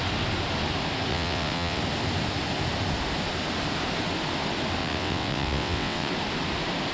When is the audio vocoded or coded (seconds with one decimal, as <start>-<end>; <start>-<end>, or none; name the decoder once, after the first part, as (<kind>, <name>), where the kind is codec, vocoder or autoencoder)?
1.1-1.8 (vocoder, WaveNeXt); 4.8-6.1